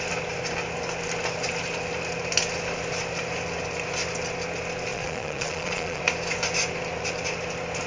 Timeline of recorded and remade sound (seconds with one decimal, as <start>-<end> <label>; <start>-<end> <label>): 0.0-4.9 recorded; 4.9-6.0 remade; 6.0-7.9 recorded